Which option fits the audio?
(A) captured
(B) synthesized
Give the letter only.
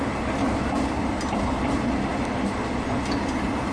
A